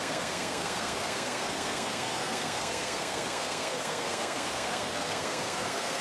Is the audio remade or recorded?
remade